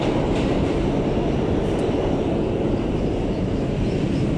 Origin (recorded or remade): recorded